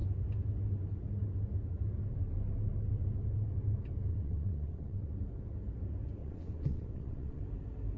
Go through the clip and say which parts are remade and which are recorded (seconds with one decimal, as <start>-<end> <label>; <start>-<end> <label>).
0.0-4.1 recorded; 4.1-5.1 remade; 5.1-6.2 recorded; 6.2-7.4 remade; 7.4-8.0 recorded